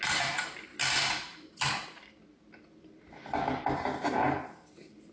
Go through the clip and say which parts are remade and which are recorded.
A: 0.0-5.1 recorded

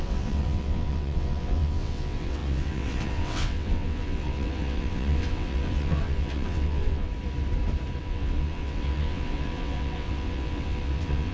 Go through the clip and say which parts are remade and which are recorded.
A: 0.0-7.1 remade; 7.1-8.0 recorded; 8.0-11.3 remade

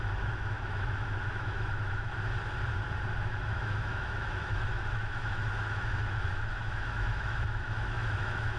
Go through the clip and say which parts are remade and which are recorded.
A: 0.0-2.1 remade; 2.1-3.2 recorded; 3.2-8.6 remade

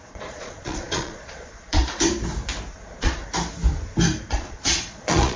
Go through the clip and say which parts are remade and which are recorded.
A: 0.0-1.8 remade; 1.8-2.7 recorded; 2.7-3.2 remade; 3.2-4.3 recorded; 4.3-5.4 remade

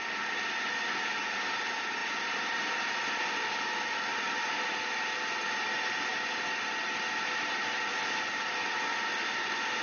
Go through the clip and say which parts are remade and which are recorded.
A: 0.0-9.8 recorded